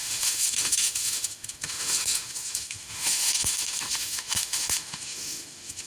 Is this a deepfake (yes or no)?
yes